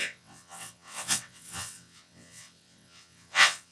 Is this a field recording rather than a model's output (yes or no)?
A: no